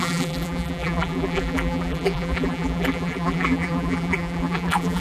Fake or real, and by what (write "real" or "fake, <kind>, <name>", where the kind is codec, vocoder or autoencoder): fake, vocoder, BigVGAN v2